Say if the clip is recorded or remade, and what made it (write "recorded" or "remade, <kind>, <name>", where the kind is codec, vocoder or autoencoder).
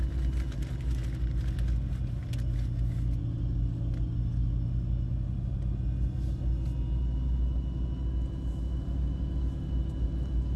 recorded